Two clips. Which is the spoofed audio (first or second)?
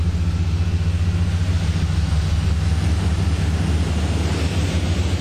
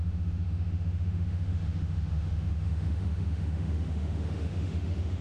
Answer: second